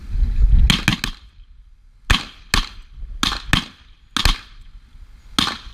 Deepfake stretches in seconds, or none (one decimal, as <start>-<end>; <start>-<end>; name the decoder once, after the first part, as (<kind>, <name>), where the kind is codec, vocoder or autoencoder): none